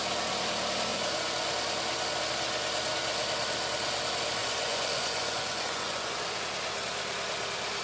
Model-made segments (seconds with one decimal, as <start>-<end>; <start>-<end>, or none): 0.9-1.5; 4.4-6.4